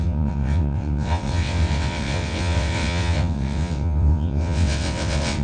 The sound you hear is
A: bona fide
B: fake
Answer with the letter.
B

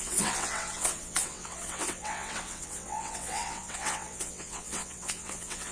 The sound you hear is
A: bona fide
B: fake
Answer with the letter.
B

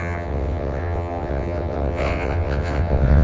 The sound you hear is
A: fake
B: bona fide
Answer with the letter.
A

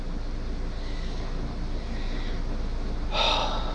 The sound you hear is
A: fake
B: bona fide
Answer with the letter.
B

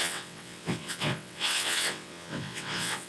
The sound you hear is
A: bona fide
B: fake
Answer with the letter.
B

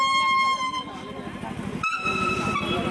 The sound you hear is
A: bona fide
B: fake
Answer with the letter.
A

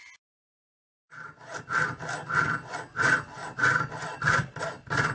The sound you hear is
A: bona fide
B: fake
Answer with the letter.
A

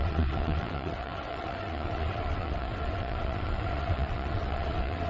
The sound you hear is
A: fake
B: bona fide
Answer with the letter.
A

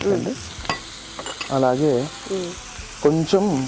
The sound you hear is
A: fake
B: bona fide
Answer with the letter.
B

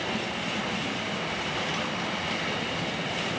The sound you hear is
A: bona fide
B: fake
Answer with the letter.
A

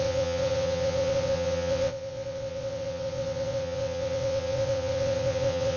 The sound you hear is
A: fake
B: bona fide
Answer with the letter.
A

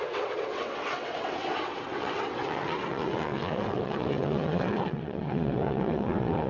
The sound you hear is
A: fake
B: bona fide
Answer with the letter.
A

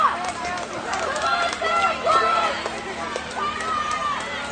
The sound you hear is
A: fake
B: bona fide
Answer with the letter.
B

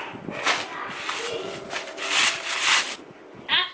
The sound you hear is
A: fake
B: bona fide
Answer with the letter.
B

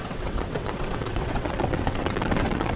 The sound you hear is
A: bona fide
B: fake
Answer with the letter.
B